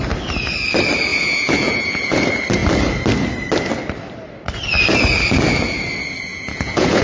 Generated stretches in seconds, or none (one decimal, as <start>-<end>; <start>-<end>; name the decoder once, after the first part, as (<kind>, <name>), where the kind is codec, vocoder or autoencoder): 1.1-2.2 (vocoder, Vocos); 6.3-7.0